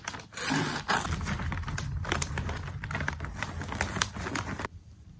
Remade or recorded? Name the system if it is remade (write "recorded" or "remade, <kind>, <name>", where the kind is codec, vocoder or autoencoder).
recorded